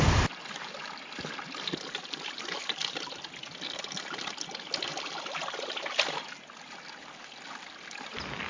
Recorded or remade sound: recorded